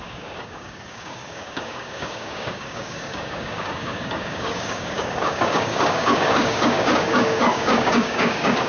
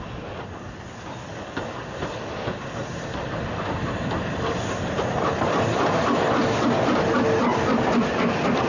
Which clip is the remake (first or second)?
first